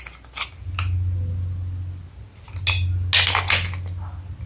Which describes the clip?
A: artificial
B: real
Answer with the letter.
B